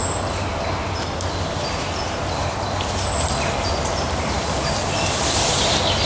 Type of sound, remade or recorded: recorded